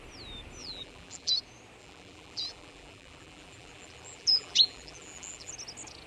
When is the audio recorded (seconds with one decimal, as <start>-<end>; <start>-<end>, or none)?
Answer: 0.0-0.6; 1.3-1.8; 5.5-6.1